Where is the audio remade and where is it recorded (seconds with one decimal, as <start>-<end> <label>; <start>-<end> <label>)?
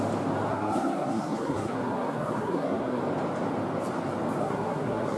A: 0.0-0.5 recorded; 0.5-3.0 remade; 3.0-4.4 recorded; 4.4-5.2 remade